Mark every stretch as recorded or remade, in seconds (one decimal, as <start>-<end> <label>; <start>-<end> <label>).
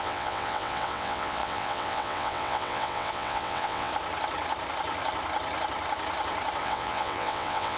0.0-3.9 remade; 3.9-6.6 recorded; 6.6-7.8 remade